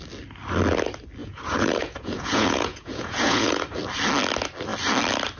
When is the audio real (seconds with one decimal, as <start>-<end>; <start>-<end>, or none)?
0.0-1.2; 3.6-5.4